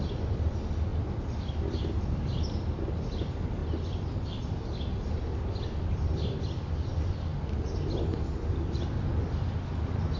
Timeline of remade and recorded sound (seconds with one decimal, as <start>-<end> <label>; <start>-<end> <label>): 0.0-0.9 recorded; 0.9-2.0 remade; 2.0-3.6 recorded; 3.6-4.1 remade; 4.1-5.3 recorded; 5.3-6.7 remade; 6.7-10.2 recorded